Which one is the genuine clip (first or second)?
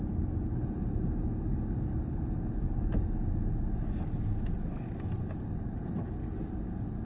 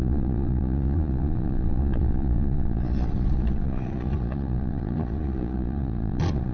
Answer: first